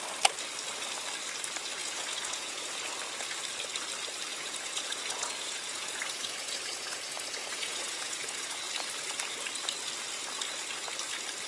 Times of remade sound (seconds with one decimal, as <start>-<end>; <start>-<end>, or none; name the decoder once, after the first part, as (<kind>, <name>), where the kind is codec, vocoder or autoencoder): 1.8-2.9 (vocoder, Vocos); 4.3-8.6